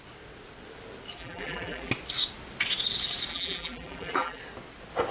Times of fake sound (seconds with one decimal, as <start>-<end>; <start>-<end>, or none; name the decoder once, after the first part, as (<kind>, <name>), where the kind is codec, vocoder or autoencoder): 1.2-1.9 (vocoder, BigVGAN v2); 3.3-4.4